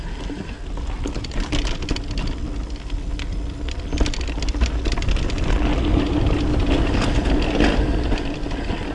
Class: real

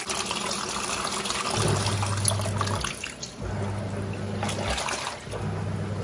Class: real